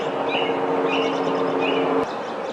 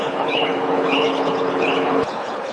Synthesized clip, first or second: second